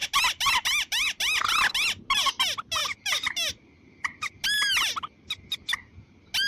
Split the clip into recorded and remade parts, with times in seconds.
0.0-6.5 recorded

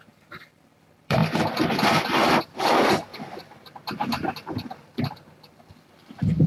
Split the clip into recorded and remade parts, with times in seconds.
0.0-1.2 remade; 1.2-2.4 recorded; 2.4-6.5 remade

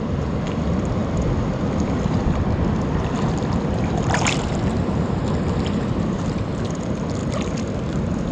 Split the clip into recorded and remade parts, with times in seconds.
0.0-8.3 recorded